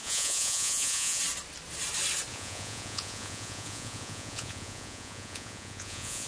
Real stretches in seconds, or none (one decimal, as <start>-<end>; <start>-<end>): 1.2-2.3